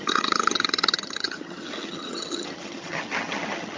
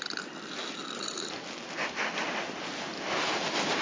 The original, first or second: second